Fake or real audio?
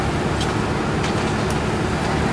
real